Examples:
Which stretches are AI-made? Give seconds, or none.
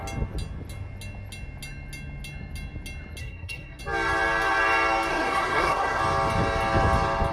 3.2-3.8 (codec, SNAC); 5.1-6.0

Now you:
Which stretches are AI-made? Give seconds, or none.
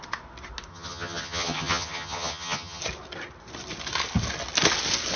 0.7-2.8 (vocoder, HiFi-GAN)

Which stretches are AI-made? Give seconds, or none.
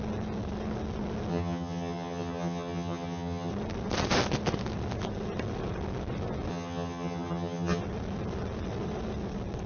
1.3-3.5 (vocoder, HiFi-GAN); 6.5-7.8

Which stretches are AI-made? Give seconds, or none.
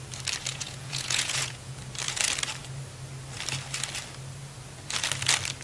0.5-1.8 (vocoder, Vocos)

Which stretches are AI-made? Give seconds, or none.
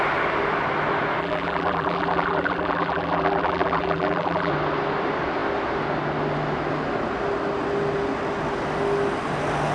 1.2-4.5 (vocoder, BigVGAN v2)